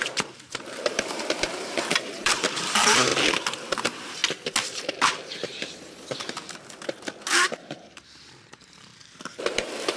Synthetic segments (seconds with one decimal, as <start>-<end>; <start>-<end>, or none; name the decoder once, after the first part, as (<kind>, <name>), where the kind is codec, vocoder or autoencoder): 0.0-3.1 (vocoder, BigVGAN v2); 3.8-4.2; 7.5-10.0